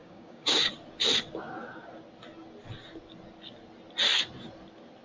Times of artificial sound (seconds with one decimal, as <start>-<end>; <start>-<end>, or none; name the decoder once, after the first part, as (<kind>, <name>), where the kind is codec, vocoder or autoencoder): 0.0-0.7 (codec, DAC)